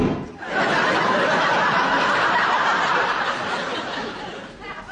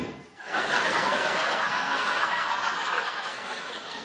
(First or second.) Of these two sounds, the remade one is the second